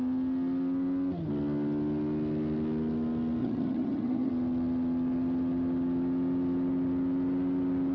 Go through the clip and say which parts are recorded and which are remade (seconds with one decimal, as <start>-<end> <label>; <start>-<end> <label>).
0.0-3.4 recorded; 3.4-4.3 remade; 4.3-7.9 recorded